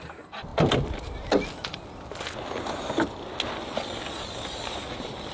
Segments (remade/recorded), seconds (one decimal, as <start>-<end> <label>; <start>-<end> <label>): 0.0-5.3 recorded